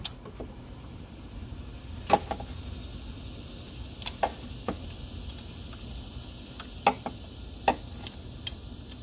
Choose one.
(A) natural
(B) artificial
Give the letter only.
A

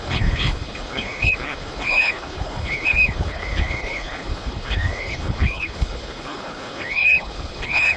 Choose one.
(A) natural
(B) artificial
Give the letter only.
B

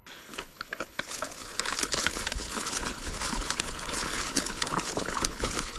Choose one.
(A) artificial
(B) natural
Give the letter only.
A